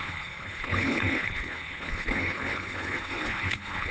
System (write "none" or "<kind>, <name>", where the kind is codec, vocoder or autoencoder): codec, HILCodec